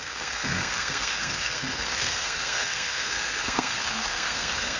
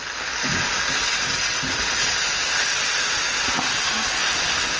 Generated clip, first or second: first